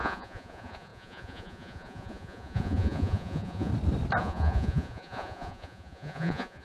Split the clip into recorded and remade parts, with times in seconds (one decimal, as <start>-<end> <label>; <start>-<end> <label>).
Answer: 0.0-3.7 remade; 3.7-4.2 recorded; 4.2-6.6 remade